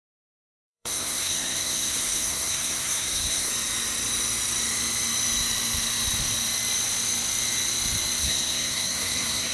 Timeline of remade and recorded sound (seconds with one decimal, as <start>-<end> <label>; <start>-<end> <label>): 0.0-3.5 remade; 3.5-8.2 recorded; 8.2-9.5 remade